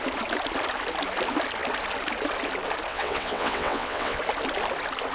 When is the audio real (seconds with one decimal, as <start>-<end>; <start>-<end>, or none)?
0.0-2.9; 4.2-5.1